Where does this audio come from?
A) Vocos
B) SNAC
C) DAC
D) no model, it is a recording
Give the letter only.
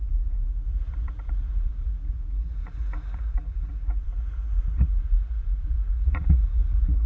A